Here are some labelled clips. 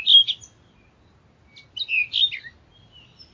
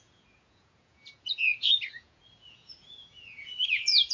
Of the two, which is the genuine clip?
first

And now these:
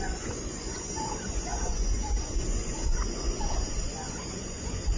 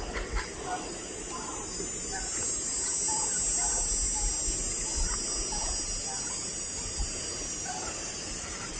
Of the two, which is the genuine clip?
second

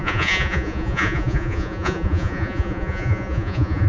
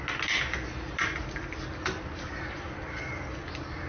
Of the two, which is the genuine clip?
second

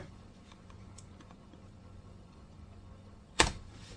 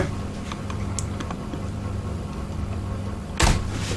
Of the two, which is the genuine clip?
second